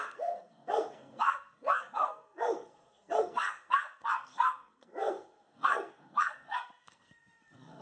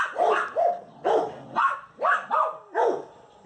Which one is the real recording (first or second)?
second